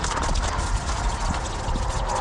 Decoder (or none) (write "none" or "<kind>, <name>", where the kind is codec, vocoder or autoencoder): none